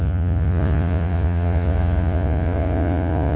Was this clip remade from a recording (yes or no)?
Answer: yes